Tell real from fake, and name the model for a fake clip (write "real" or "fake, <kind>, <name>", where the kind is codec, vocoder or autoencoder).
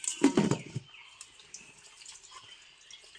real